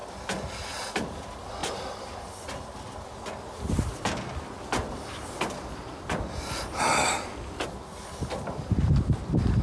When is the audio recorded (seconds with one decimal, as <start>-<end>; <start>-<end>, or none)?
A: 0.0-9.6